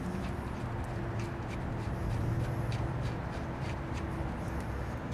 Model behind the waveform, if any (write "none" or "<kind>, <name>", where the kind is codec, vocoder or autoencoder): none